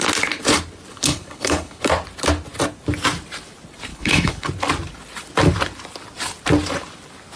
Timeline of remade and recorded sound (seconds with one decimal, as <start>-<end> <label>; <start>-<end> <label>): 0.0-0.9 recorded; 0.9-1.9 remade; 1.9-3.9 recorded; 3.9-4.5 remade; 4.5-7.4 recorded